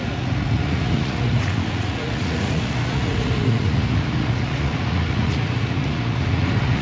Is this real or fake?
fake